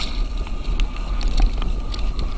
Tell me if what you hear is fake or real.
real